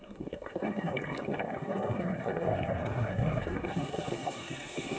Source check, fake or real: fake